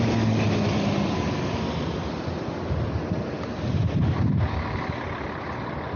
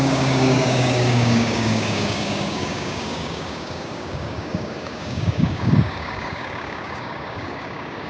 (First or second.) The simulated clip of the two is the second